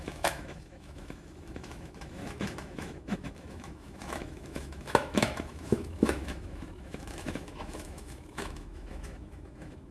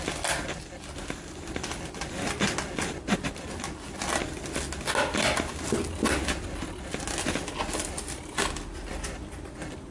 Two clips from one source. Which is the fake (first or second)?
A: first